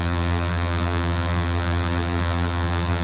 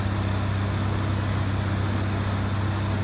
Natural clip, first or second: second